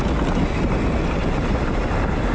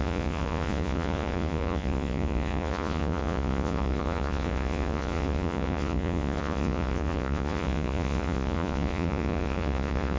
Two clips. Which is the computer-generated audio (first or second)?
second